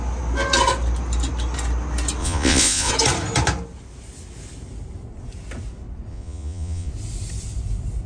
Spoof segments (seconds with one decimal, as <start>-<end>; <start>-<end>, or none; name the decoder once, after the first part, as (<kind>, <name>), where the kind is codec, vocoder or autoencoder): 2.2-2.9 (vocoder, Vocos); 6.1-6.9